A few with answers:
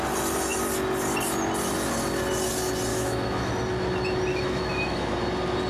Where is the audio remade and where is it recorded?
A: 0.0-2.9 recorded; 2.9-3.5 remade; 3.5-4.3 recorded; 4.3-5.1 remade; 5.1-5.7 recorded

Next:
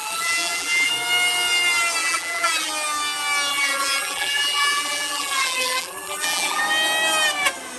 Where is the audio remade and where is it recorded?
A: 0.0-0.9 remade; 0.9-2.0 recorded; 2.0-2.7 remade; 2.7-3.5 recorded; 3.5-6.6 remade; 6.6-7.8 recorded

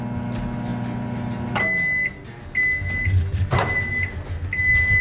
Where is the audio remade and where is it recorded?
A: 0.0-5.0 recorded

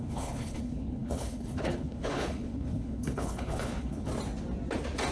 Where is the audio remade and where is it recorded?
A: 0.0-4.1 remade; 4.1-5.1 recorded